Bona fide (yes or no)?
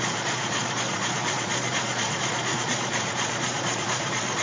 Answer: no